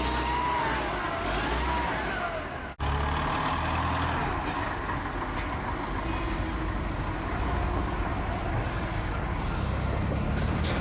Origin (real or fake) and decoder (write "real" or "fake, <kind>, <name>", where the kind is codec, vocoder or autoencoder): real